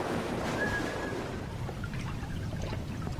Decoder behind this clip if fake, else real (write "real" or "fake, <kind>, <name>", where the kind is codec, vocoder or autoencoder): fake, vocoder, BigVGAN v2